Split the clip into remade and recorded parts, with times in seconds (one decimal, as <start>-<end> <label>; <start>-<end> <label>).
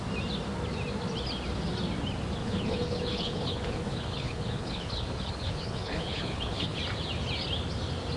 0.0-2.4 recorded; 2.4-6.8 remade; 6.8-8.2 recorded